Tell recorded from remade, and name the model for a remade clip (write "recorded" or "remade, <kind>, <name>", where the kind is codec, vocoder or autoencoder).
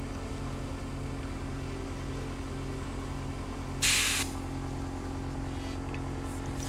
recorded